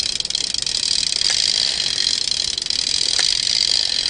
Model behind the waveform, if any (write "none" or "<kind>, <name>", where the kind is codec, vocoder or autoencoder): none